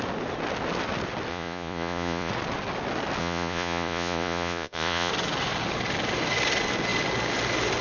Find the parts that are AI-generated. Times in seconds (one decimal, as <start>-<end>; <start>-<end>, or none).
1.3-2.3; 3.2-5.1